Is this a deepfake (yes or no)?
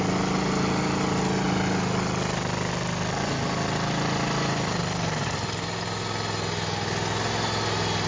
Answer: no